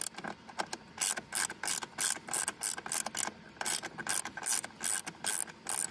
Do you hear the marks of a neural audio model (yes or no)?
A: no